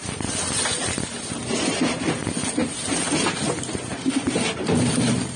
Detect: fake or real real